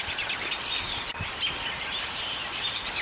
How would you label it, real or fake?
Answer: real